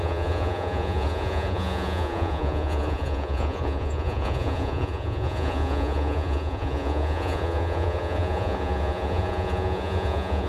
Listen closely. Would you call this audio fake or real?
fake